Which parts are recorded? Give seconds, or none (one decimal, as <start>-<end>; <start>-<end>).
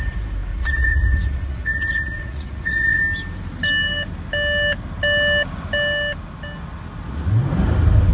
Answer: 0.0-0.5; 3.0-8.1